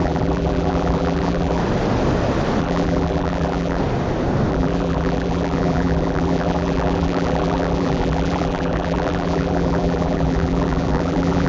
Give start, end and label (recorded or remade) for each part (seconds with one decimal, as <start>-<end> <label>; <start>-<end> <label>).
0.0-1.6 remade; 1.6-2.6 recorded; 2.6-3.8 remade; 3.8-4.5 recorded; 4.5-11.5 remade